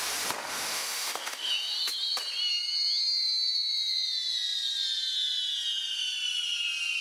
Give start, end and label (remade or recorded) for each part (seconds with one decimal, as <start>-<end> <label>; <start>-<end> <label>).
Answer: 0.0-0.4 recorded; 0.4-1.5 remade; 1.5-7.0 recorded